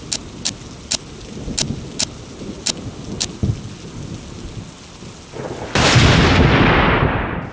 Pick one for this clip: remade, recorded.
recorded